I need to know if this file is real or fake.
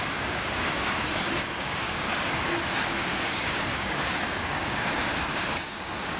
fake